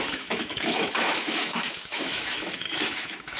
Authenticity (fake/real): fake